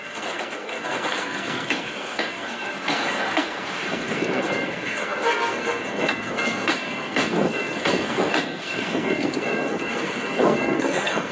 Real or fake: fake